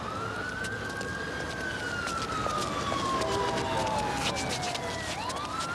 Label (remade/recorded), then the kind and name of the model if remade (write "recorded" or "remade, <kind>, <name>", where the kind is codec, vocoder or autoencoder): recorded